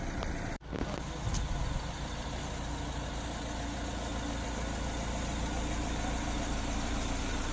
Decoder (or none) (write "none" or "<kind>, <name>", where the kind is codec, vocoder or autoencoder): none